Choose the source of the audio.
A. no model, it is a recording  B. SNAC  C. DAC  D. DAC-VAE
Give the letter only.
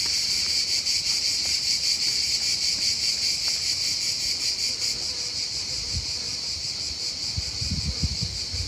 A